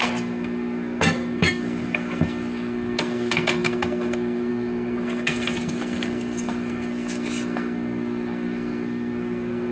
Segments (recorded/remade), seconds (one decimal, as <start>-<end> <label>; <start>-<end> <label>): 0.0-9.7 remade